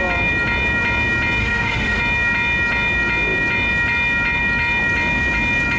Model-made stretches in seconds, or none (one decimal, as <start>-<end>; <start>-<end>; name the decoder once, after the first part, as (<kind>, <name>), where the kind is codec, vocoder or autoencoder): 1.4-2.0 (autoencoder, DAC-VAE)